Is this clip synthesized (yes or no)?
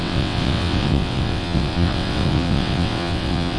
yes